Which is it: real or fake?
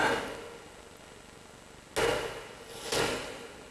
real